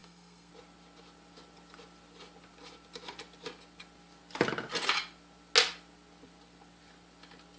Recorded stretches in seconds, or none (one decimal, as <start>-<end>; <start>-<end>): 0.5-7.6